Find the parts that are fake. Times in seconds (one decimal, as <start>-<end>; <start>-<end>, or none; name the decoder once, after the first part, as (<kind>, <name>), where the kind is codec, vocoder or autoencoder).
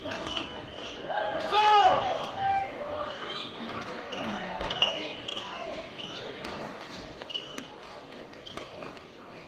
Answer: 0.0-9.5 (codec, DAC)